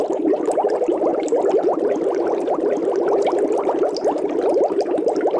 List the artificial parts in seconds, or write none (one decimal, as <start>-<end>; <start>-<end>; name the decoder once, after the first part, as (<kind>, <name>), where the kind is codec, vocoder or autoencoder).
0.0-1.1 (vocoder, BigVGAN v2); 4.3-5.4